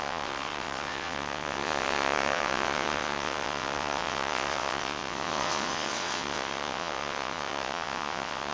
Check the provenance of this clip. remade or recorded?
remade